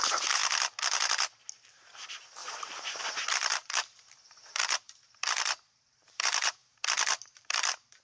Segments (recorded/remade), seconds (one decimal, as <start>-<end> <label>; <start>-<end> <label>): 0.0-0.4 remade; 0.4-1.5 recorded; 1.5-6.6 remade; 6.6-7.4 recorded; 7.4-8.0 remade